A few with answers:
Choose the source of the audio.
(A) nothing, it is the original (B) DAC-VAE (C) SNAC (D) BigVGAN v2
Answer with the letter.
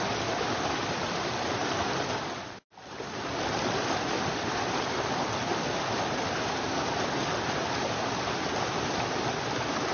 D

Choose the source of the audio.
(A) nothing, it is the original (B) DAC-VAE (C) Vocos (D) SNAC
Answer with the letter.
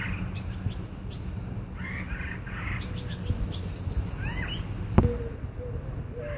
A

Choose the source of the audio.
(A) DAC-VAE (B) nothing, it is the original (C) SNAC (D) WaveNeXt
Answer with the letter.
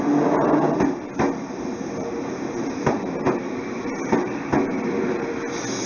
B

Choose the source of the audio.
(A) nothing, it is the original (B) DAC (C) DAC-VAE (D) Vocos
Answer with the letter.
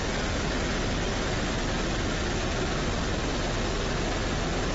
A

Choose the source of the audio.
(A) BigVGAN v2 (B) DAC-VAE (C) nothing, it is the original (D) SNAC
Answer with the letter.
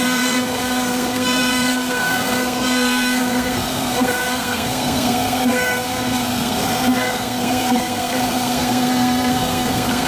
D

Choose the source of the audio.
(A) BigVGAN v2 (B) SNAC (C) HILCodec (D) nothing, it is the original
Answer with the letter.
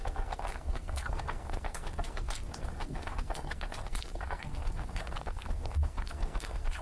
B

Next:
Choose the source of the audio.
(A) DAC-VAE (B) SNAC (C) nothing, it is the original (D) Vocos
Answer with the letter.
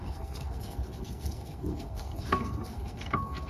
B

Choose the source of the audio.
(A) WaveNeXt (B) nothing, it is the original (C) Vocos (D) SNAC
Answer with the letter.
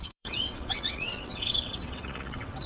A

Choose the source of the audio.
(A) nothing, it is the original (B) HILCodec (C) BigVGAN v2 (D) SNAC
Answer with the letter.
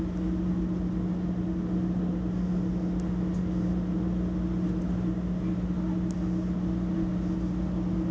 A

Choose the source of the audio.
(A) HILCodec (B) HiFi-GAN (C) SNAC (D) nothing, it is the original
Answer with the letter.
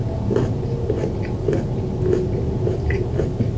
D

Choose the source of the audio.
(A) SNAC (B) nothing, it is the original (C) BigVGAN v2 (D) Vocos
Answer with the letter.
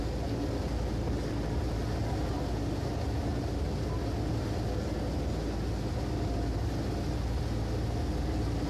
B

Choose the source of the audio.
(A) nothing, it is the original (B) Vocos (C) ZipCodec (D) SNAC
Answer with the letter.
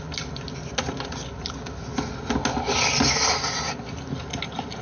A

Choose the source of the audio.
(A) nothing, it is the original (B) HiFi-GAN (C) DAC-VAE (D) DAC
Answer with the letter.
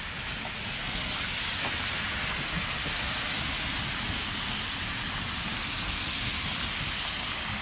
A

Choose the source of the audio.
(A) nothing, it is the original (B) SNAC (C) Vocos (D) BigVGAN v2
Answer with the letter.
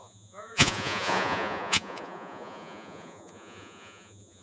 C